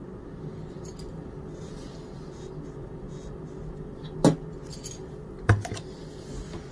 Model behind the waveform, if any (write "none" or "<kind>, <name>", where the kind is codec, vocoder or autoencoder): none